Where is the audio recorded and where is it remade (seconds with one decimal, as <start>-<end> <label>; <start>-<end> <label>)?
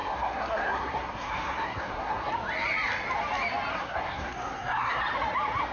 0.0-2.3 remade; 2.3-3.7 recorded; 3.7-5.0 remade; 5.0-5.7 recorded